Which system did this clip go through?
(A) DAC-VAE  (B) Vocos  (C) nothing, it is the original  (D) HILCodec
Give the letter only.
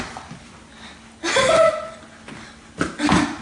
C